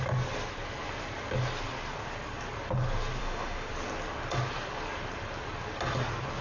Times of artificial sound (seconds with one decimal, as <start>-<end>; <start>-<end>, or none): 3.2-3.7